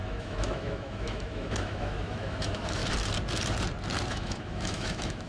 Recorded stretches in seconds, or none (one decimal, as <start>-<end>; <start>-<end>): 2.8-4.1